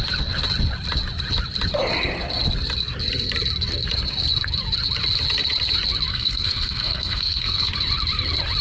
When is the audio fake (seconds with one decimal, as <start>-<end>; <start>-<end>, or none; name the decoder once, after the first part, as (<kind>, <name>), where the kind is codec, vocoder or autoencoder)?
6.1-7.7 (codec, SNAC)